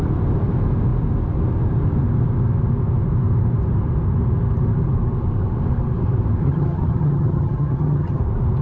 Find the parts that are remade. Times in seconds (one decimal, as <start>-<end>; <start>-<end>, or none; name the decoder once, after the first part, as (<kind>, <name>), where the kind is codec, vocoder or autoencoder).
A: 6.4-8.2 (vocoder, HiFi-GAN)